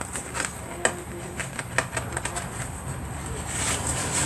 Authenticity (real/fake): real